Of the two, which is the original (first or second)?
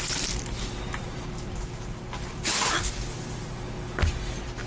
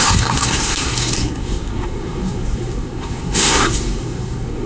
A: first